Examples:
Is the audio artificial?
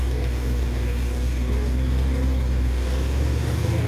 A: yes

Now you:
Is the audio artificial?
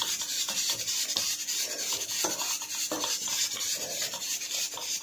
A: yes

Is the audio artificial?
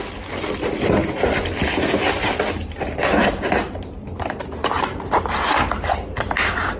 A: no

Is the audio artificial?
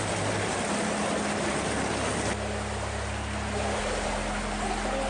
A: no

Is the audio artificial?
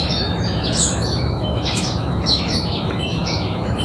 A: yes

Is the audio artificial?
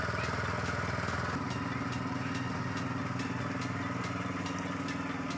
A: no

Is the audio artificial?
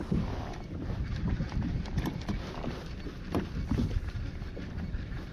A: no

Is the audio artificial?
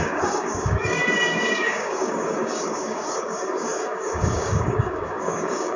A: yes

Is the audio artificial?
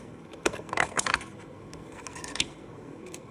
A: yes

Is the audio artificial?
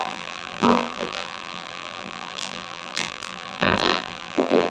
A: yes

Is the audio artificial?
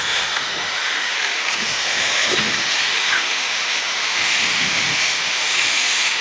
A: yes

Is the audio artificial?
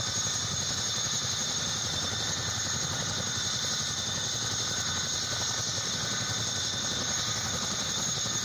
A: no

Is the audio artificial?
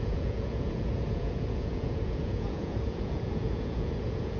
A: yes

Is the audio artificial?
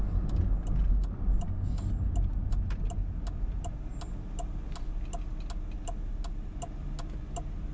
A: no